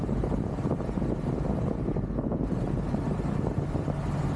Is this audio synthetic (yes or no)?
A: no